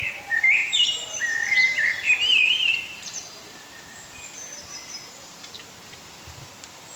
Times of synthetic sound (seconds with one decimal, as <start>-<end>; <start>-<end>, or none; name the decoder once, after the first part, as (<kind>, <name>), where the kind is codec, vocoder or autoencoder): 0.0-7.0 (vocoder, BigVGAN v2)